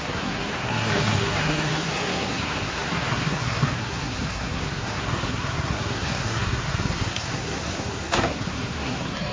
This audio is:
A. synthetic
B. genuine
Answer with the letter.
A